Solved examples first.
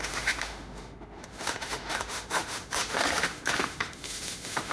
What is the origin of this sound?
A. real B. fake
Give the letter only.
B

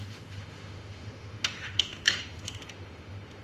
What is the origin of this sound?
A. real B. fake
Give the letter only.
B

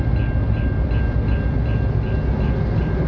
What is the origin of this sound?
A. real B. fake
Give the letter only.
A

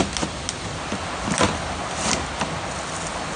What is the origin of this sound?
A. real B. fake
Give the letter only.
A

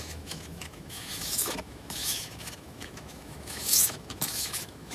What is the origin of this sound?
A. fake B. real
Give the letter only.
A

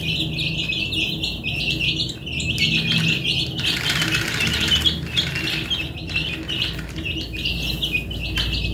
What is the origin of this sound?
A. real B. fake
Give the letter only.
A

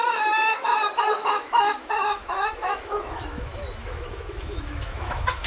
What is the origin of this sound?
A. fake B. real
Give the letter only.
A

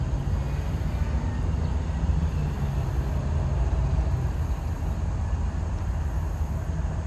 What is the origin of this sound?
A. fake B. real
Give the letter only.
B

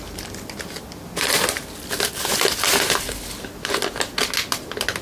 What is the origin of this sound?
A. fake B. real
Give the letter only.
B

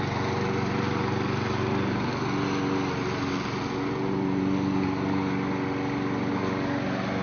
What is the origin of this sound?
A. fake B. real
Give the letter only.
B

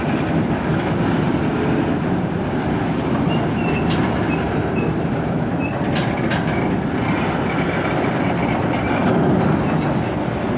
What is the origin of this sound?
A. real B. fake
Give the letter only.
A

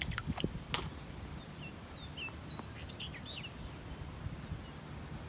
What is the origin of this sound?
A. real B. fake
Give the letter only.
A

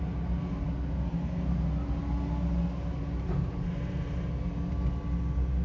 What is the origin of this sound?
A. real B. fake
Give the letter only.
A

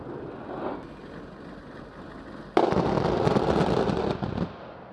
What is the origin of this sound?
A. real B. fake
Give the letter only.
A